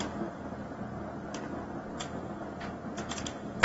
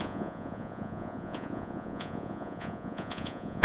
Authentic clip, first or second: first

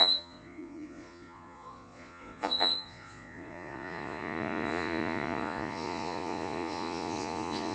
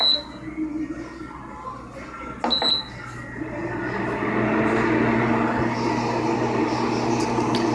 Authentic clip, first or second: second